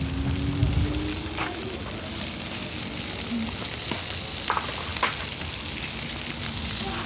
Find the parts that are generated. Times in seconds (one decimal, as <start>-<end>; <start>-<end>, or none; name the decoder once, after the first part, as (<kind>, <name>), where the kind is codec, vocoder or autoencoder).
none